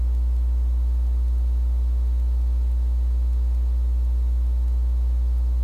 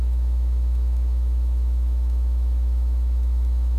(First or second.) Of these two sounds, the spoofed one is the second